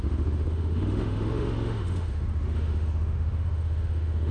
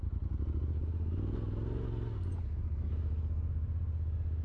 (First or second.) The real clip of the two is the second